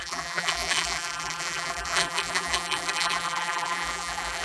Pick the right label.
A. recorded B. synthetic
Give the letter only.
B